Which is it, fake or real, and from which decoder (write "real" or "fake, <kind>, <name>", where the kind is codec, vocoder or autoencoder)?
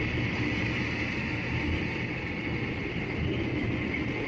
real